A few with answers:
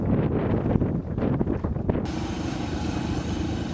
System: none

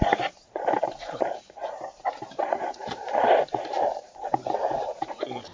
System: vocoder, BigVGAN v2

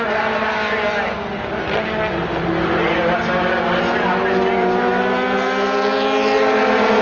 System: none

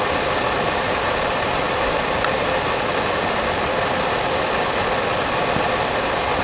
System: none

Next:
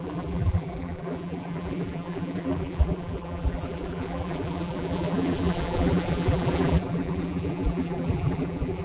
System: vocoder, BigVGAN v2